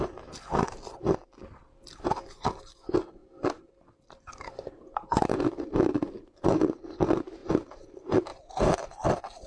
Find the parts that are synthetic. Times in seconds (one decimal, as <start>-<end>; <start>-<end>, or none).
7.4-7.9; 8.3-9.1